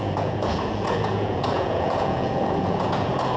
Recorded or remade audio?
remade